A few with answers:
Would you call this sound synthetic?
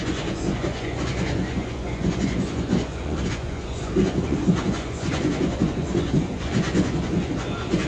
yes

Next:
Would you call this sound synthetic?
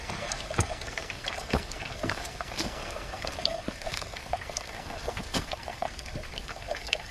yes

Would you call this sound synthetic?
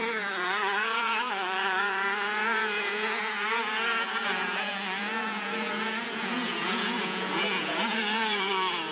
yes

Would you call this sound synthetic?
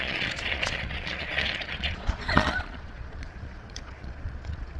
yes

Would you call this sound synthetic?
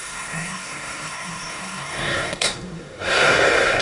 yes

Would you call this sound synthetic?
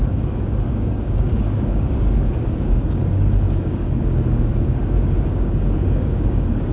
yes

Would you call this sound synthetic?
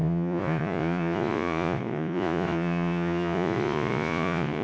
yes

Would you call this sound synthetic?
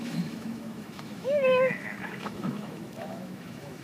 yes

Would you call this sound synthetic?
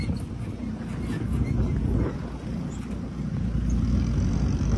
no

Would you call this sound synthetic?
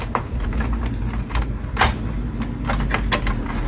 no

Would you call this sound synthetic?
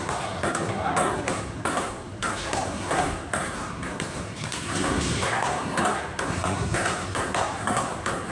yes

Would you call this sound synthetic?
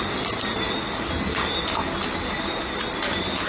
no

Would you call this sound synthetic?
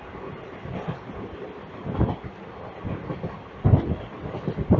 no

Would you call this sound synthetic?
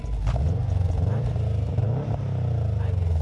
no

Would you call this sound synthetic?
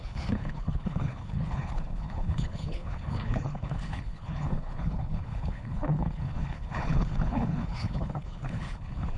yes